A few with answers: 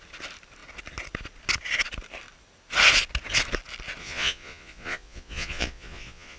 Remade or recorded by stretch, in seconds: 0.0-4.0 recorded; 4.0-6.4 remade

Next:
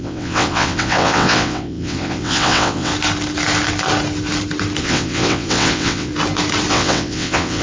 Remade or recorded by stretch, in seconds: 0.0-2.9 remade; 2.9-4.8 recorded; 4.8-6.1 remade; 6.1-6.7 recorded; 6.7-7.6 remade

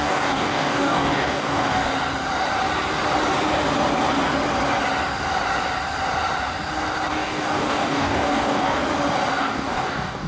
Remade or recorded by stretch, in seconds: 0.0-1.9 remade; 1.9-7.1 recorded; 7.1-8.8 remade; 8.8-9.4 recorded; 9.4-10.3 remade

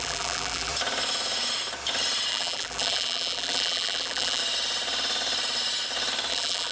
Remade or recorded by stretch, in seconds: 0.0-0.7 remade; 0.7-2.3 recorded; 2.3-4.4 remade; 4.4-6.3 recorded; 6.3-6.7 remade